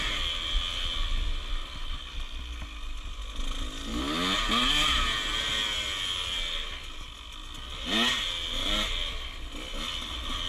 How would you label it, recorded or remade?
recorded